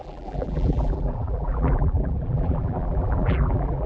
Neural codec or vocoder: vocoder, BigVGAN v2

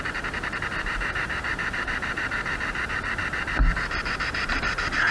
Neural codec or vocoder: vocoder, BigVGAN v2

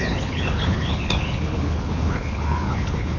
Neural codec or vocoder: codec, HILCodec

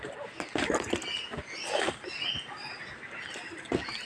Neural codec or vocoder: none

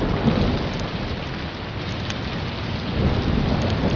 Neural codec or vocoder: none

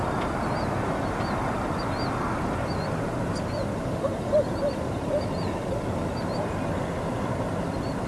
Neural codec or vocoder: none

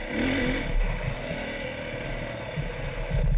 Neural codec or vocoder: none